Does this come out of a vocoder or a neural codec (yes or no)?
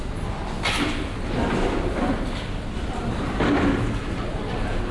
no